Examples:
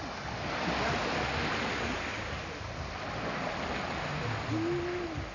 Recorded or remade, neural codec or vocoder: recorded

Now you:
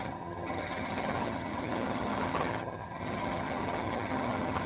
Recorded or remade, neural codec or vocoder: remade, vocoder, HiFi-GAN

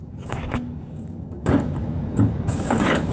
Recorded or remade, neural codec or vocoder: remade, codec, DAC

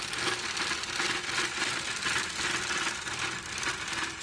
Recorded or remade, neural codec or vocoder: recorded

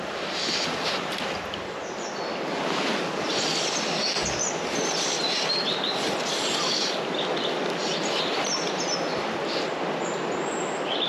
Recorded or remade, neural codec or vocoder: recorded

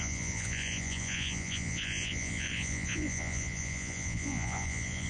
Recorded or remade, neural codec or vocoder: remade, vocoder, Vocos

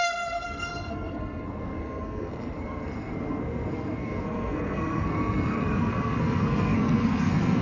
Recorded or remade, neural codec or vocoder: remade, codec, SNAC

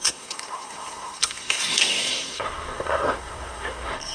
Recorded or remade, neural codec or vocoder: remade, codec, SNAC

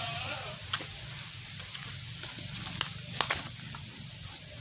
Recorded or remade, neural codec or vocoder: recorded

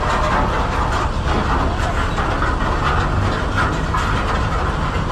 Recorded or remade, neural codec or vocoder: recorded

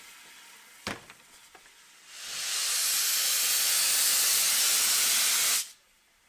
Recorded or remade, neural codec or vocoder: remade, vocoder, BigVGAN v2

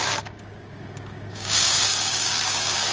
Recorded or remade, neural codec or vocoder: remade, codec, DAC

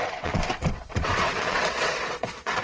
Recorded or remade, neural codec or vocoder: remade, vocoder, WaveNeXt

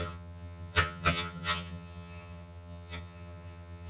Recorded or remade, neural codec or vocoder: remade, vocoder, HiFi-GAN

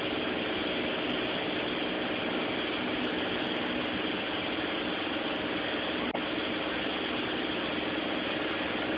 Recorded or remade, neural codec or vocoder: recorded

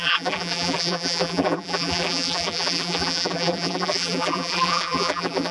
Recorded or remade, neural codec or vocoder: remade, vocoder, BigVGAN v2